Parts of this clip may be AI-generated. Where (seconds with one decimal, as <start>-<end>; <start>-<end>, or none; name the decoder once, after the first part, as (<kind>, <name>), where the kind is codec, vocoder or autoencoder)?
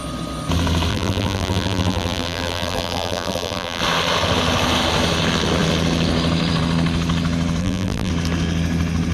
0.9-3.8 (vocoder, BigVGAN v2); 7.6-8.1